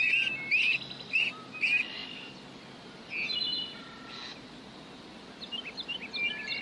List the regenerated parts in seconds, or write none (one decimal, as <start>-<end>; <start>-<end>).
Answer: none

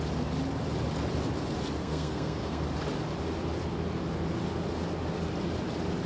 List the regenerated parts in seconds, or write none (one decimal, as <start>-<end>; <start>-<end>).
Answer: 1.8-2.6

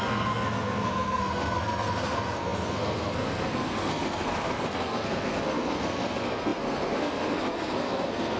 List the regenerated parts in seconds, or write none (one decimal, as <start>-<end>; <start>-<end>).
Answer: 0.0-8.4

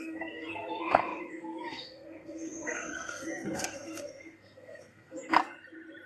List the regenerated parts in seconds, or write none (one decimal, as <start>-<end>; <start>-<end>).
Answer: 0.0-5.4